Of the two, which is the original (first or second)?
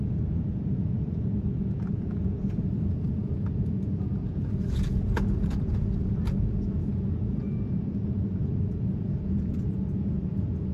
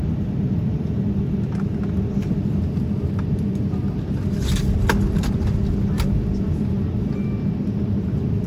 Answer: second